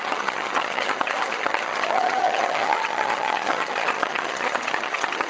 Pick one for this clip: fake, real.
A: fake